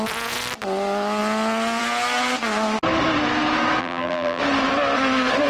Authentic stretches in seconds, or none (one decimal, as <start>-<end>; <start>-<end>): 0.0-3.8; 4.4-5.5